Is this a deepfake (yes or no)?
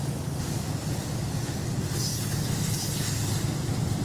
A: no